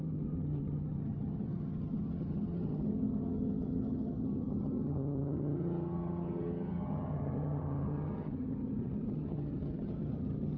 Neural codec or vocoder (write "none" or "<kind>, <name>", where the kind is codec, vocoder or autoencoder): vocoder, HiFi-GAN